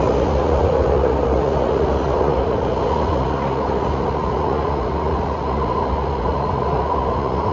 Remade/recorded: remade